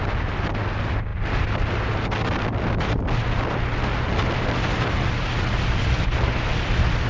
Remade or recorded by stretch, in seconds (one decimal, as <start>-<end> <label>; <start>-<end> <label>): 0.0-7.1 recorded